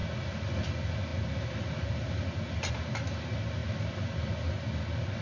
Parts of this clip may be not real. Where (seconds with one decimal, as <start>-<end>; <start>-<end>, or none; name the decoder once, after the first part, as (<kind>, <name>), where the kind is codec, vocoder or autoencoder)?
none